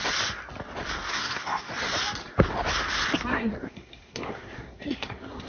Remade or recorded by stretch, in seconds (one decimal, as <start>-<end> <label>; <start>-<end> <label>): 0.0-1.1 recorded; 1.1-1.7 remade; 1.7-3.3 recorded; 3.3-5.5 remade